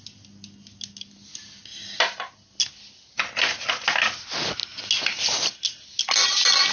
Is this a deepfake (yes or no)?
no